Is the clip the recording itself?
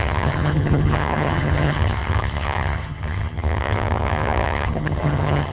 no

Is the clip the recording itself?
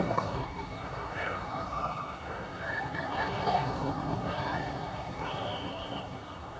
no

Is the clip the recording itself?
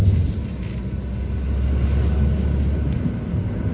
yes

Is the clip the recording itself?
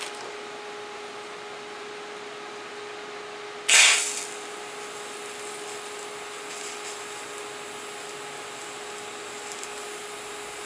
yes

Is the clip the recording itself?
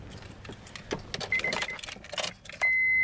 yes